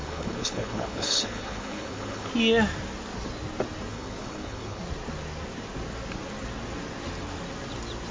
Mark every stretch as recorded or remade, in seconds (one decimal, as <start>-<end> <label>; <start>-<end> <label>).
0.0-2.3 remade; 2.3-3.9 recorded; 3.9-4.8 remade; 4.8-8.1 recorded